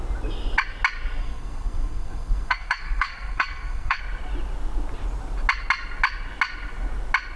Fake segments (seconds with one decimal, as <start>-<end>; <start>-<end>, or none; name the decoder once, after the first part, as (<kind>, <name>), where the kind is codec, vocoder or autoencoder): 1.2-4.0 (codec, SNAC)